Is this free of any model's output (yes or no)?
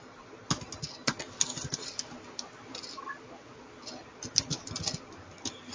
yes